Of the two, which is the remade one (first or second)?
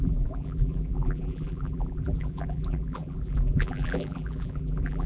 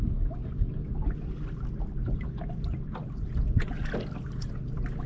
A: first